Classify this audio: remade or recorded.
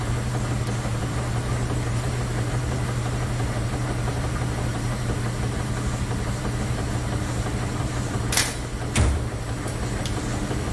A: remade